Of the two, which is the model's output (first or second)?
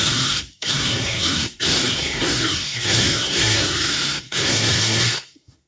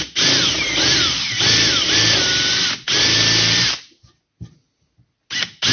first